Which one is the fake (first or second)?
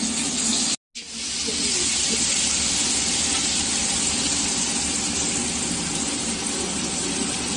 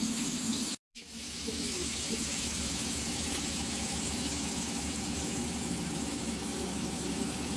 second